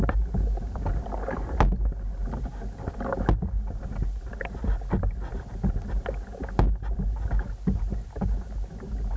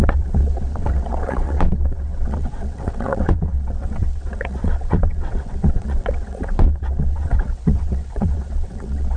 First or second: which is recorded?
first